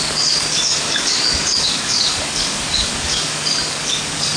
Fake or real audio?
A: fake